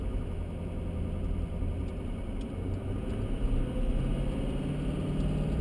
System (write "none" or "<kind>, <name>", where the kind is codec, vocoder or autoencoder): none